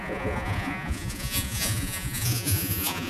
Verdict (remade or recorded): remade